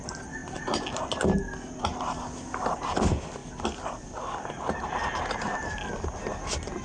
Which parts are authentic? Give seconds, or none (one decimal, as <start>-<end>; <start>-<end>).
0.0-6.8